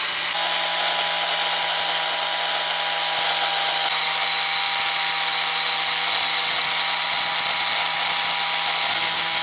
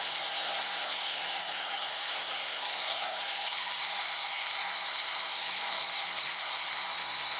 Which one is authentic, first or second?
first